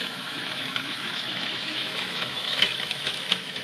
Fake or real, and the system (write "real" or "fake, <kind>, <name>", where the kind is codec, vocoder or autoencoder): fake, autoencoder, DAC-VAE